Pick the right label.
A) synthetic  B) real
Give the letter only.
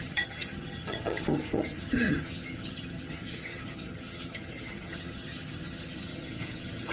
A